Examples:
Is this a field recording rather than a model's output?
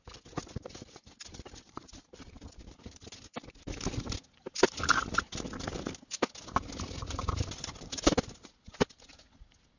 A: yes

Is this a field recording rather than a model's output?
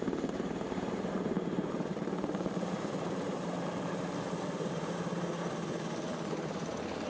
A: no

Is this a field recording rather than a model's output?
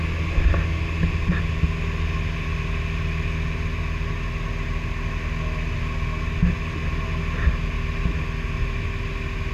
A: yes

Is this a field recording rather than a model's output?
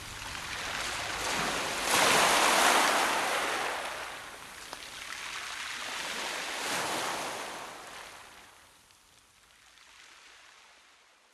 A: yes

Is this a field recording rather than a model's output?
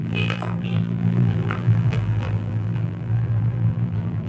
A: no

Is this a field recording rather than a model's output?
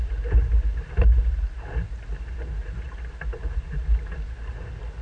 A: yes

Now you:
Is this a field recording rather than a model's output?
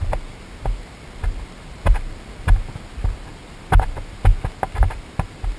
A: yes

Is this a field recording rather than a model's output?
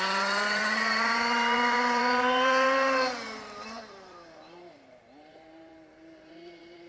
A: no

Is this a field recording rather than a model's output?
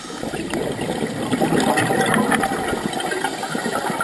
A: yes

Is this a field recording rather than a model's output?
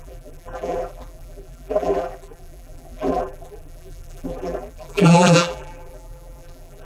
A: no